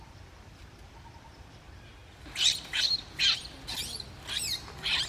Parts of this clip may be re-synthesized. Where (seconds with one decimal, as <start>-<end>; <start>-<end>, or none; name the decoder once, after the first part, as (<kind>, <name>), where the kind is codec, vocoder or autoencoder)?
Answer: none